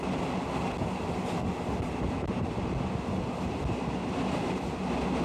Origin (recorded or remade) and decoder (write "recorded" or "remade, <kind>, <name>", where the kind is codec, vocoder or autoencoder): recorded